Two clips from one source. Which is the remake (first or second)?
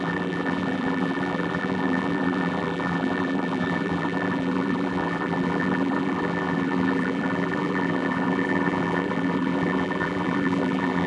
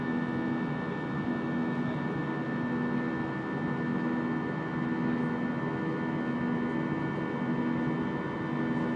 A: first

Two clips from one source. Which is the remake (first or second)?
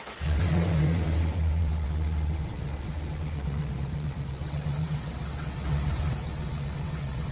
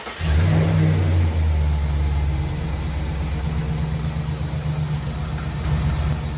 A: first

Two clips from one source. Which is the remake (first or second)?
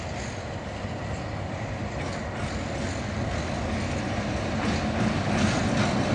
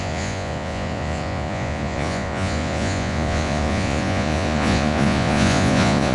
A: second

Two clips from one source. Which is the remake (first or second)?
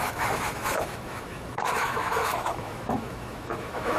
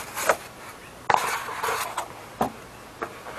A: first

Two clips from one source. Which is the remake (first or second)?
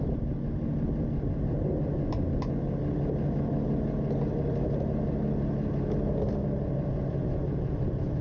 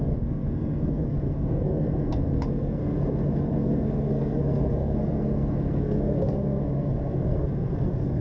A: second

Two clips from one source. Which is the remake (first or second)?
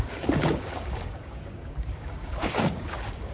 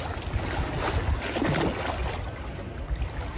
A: first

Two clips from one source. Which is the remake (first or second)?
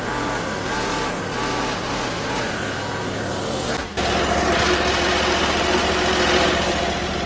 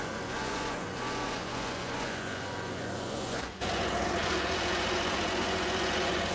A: second